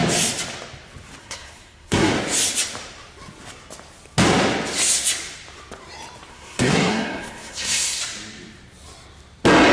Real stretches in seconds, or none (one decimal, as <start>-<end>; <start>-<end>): 0.0-1.2; 2.1-6.3; 8.0-9.7